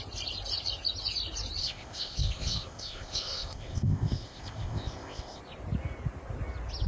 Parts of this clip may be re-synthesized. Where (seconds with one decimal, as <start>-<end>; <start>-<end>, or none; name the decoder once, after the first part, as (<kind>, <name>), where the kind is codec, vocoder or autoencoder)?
1.6-5.4 (codec, ZipCodec)